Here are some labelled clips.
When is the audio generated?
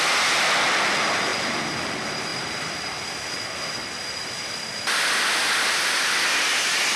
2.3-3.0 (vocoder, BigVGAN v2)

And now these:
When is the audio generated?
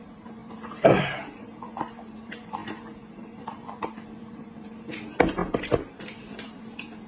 0.0-7.1 (vocoder, BigVGAN v2)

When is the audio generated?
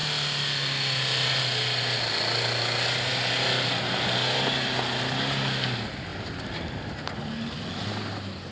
none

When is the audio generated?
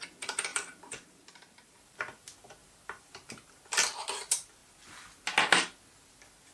0.5-1.8 (vocoder, BigVGAN v2); 2.6-3.5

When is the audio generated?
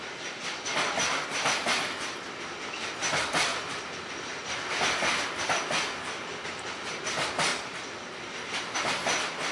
3.5-4.1 (vocoder, BigVGAN v2); 7.5-8.2